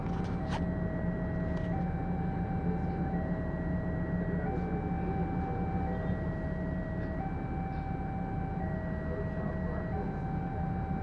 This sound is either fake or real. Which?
real